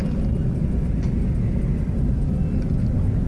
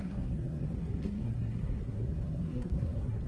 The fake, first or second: second